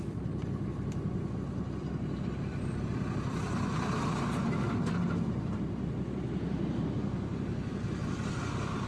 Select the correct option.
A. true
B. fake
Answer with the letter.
A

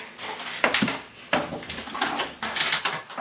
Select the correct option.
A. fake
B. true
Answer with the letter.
B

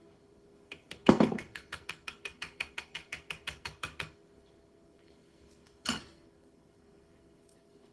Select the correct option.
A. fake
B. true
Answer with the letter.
A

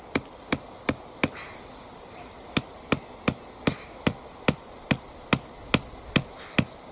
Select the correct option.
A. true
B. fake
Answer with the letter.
A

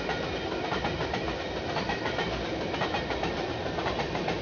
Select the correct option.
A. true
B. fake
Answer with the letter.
A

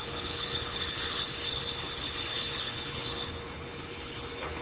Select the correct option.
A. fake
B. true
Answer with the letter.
A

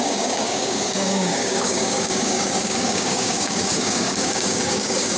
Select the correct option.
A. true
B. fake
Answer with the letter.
B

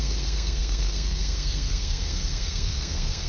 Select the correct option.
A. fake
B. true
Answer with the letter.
A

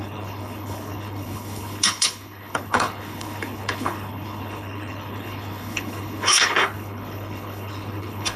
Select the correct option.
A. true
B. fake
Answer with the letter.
B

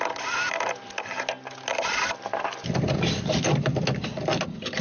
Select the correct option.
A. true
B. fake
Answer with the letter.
A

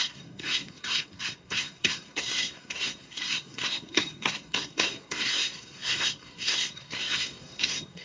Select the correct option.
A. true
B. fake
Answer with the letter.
B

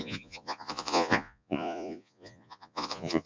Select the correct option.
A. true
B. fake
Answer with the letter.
B